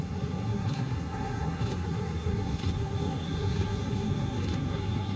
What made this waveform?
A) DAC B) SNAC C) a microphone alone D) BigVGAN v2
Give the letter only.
B